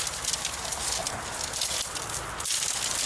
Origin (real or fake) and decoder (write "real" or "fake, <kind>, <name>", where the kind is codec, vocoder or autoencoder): real